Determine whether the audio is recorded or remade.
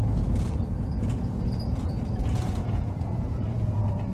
remade